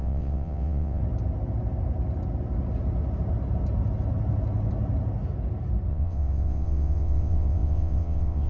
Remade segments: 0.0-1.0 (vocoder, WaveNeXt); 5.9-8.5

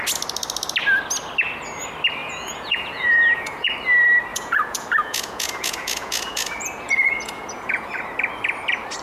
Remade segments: 2.2-3.7 (vocoder, Vocos); 4.3-7.9

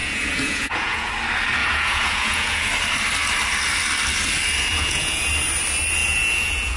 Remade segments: 0.0-1.1 (vocoder, Vocos); 1.6-2.7; 4.7-5.3; 6.0-6.8

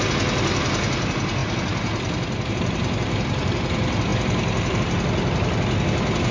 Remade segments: none